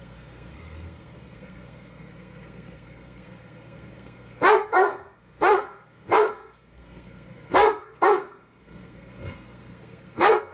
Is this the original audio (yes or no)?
no